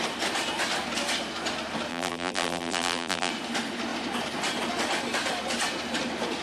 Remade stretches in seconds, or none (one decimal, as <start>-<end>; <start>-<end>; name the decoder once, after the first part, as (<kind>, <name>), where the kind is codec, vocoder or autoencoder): 1.9-3.3 (vocoder, BigVGAN v2)